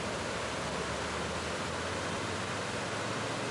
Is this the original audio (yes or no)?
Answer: yes